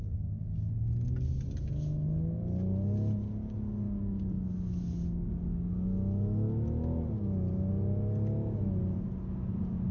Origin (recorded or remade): recorded